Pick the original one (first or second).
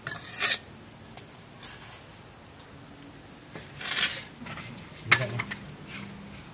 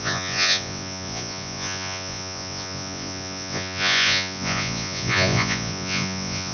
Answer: first